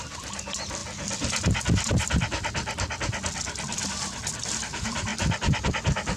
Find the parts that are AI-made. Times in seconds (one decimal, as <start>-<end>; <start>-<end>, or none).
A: none